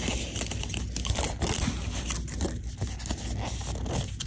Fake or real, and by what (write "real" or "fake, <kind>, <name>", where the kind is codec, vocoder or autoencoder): real